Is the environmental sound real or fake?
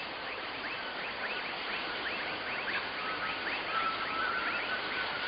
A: real